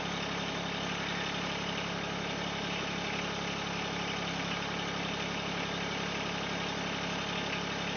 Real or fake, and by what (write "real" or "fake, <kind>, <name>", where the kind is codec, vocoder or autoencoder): real